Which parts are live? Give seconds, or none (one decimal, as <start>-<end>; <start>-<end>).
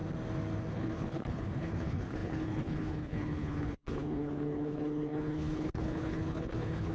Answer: 0.0-0.7